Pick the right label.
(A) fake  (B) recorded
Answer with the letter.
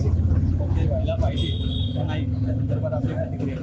B